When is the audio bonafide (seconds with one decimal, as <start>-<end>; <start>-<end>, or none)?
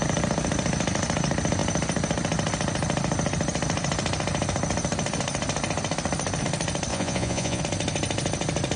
0.0-6.9; 7.6-8.8